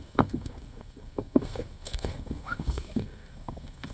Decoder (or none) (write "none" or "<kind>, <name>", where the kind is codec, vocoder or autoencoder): codec, SNAC